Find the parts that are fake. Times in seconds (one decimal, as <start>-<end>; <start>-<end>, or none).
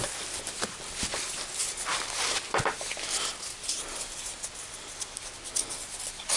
none